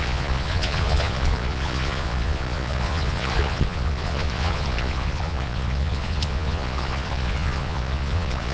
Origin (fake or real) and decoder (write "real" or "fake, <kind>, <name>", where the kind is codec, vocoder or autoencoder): fake, vocoder, Vocos